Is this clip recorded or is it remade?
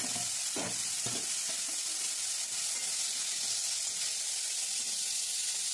recorded